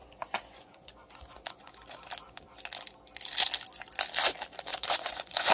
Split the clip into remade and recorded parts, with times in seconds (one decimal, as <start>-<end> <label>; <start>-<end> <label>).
0.0-1.7 remade; 1.7-4.7 recorded; 4.7-5.5 remade